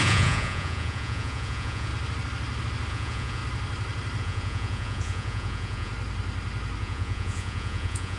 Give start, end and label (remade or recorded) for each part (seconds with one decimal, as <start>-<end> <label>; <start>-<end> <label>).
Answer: 0.0-1.9 remade; 1.9-2.9 recorded; 2.9-3.4 remade; 3.4-4.2 recorded; 4.2-5.9 remade; 5.9-6.8 recorded; 6.8-8.2 remade

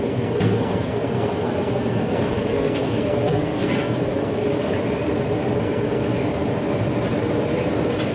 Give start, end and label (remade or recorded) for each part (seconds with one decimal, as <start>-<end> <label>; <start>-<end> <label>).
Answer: 0.0-4.4 remade; 4.4-5.6 recorded; 5.6-6.1 remade; 6.1-8.1 recorded

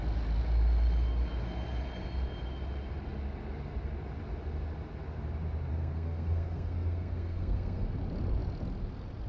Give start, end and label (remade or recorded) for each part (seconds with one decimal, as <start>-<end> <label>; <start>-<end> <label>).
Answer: 0.0-5.7 recorded; 5.7-7.9 remade; 7.9-9.3 recorded